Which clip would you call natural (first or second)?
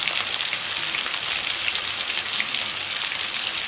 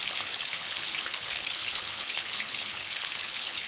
first